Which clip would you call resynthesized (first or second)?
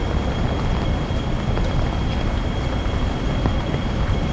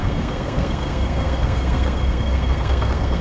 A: second